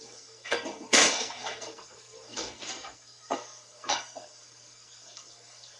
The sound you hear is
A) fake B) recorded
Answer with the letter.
A